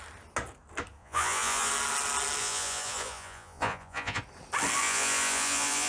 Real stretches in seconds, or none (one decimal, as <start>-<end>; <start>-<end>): 0.0-1.0; 1.7-2.4; 4.2-4.8